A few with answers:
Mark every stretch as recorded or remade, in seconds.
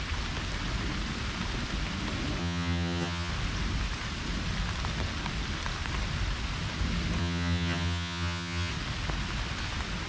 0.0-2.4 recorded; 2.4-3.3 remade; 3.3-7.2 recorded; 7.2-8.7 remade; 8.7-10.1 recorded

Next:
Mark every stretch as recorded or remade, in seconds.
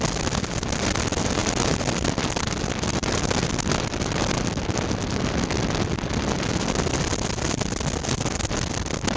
0.0-1.4 recorded; 1.4-2.0 remade; 2.0-9.2 recorded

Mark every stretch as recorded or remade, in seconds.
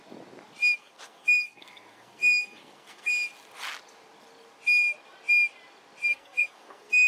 0.0-0.8 recorded; 0.8-3.1 remade; 3.1-6.1 recorded; 6.1-7.1 remade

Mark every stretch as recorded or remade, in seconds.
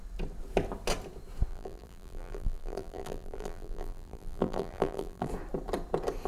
0.0-1.5 recorded; 1.5-5.3 remade; 5.3-6.3 recorded